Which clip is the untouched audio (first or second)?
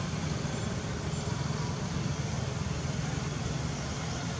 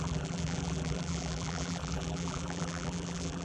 first